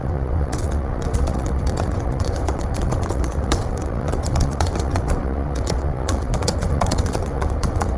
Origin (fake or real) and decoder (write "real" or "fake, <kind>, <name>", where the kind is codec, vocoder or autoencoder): fake, vocoder, WaveNeXt